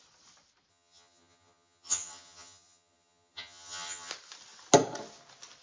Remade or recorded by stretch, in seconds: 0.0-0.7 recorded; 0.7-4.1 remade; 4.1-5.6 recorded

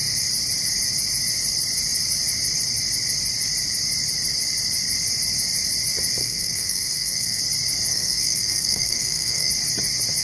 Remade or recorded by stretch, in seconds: 0.0-6.2 recorded; 6.2-7.4 remade; 7.4-7.9 recorded; 7.9-9.5 remade; 9.5-10.2 recorded

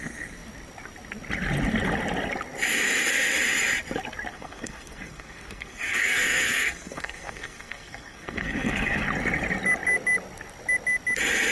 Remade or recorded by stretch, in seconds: 0.0-4.3 recorded; 4.3-9.0 remade; 9.0-11.5 recorded

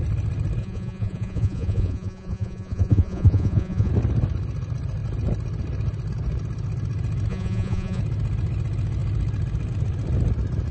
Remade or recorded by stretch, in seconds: 0.0-0.6 recorded; 0.6-3.9 remade; 3.9-7.3 recorded; 7.3-8.0 remade; 8.0-10.7 recorded